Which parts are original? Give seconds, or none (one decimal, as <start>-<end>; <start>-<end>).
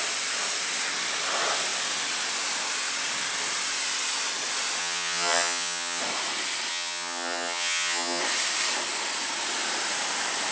0.0-4.8; 6.0-6.7; 8.2-10.5